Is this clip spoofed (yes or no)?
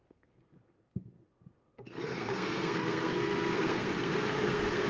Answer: yes